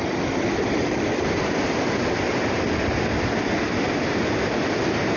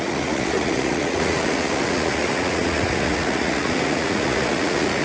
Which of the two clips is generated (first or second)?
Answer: second